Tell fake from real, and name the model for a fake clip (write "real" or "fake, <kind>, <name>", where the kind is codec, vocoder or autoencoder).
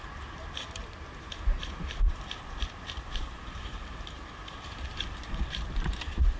fake, vocoder, BigVGAN v2